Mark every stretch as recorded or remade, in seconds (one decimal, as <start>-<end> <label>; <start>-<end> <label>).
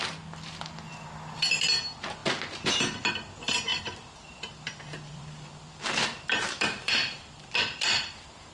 0.0-0.9 recorded; 0.9-1.6 remade; 1.6-3.7 recorded; 3.7-8.5 remade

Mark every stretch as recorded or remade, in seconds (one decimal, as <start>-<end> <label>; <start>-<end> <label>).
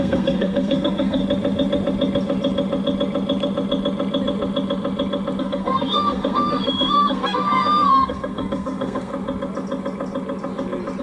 0.0-1.2 remade; 1.2-5.4 recorded; 5.4-9.1 remade; 9.1-11.0 recorded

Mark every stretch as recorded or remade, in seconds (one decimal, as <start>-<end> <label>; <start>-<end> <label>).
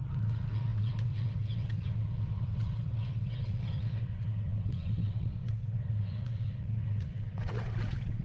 0.0-8.2 remade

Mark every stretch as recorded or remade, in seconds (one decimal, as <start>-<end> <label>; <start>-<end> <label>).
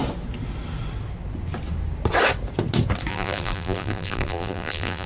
0.0-3.1 recorded; 3.1-5.1 remade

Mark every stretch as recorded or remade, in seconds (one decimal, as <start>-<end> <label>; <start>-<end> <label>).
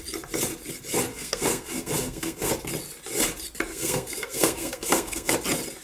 0.0-1.1 recorded; 1.1-2.5 remade; 2.5-3.7 recorded; 3.7-5.3 remade; 5.3-5.8 recorded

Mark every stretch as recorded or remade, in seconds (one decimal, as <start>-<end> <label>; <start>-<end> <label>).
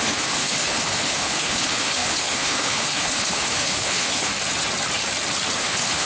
0.0-4.3 remade; 4.3-5.6 recorded; 5.6-6.1 remade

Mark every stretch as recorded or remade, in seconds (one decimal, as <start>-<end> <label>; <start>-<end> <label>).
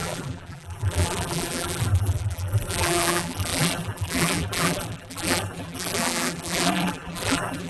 0.0-7.7 remade